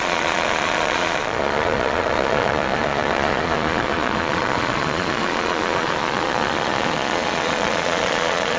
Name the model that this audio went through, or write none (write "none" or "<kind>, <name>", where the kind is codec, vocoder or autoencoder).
vocoder, Vocos